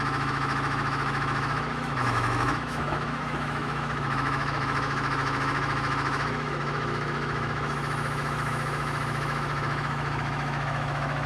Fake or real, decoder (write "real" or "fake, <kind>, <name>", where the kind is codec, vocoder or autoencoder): fake, autoencoder, DAC-VAE